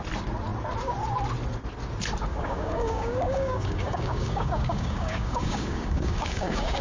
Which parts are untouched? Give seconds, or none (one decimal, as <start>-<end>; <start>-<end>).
0.0-2.3